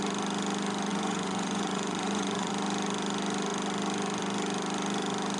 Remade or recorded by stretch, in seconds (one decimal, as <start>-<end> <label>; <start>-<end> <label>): 0.0-0.9 recorded; 0.9-2.5 remade; 2.5-5.4 recorded

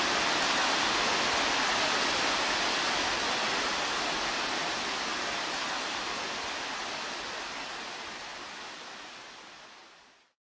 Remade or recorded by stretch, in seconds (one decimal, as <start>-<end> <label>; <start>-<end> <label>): 0.0-5.1 recorded; 5.1-6.1 remade; 6.1-10.6 recorded

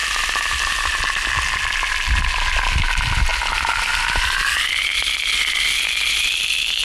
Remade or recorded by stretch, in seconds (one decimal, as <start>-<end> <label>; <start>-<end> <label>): 0.0-6.8 recorded

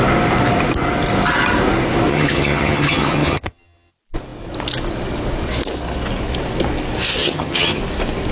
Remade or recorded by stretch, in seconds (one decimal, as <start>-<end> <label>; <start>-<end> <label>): 0.0-2.1 recorded; 2.1-3.9 remade; 3.9-7.2 recorded; 7.2-7.8 remade; 7.8-8.3 recorded